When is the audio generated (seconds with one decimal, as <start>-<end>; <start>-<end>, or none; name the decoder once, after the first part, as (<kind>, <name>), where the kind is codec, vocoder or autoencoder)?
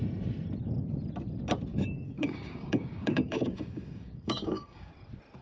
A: 1.7-4.9 (codec, DAC)